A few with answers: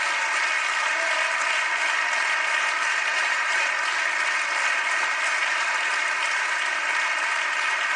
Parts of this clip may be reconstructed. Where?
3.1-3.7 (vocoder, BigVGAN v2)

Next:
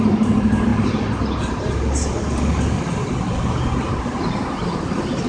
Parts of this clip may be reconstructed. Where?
none